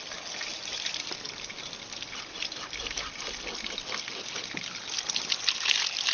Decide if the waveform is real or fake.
real